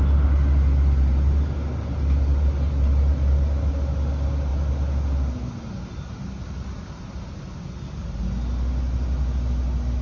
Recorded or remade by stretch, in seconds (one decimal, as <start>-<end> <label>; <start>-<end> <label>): 0.0-10.0 recorded